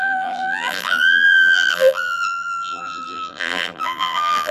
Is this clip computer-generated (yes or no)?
yes